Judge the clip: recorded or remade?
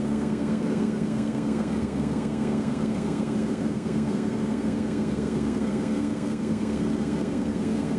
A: remade